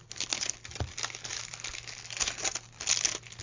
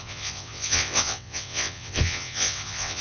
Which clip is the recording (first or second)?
first